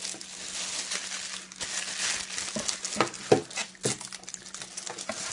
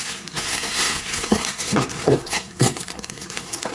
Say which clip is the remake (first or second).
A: second